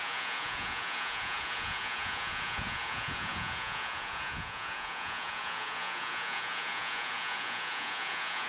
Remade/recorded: remade